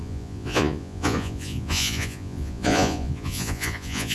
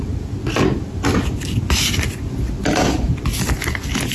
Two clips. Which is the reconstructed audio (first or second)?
first